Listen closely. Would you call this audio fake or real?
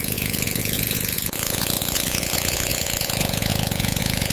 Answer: fake